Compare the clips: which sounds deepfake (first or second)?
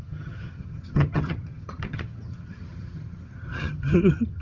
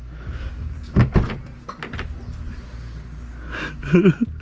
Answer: first